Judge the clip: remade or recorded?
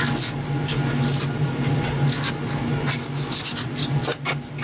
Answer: recorded